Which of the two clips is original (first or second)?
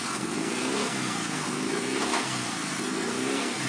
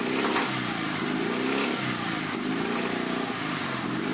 second